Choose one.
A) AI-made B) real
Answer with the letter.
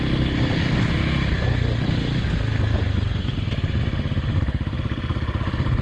B